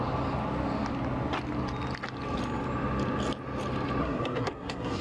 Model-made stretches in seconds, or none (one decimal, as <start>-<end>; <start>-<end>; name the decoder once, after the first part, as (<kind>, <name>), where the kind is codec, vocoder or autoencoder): 4.0-5.0 (codec, SNAC)